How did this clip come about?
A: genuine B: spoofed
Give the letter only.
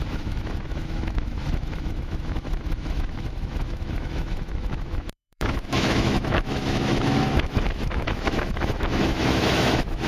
B